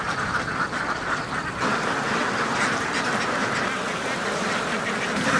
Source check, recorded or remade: recorded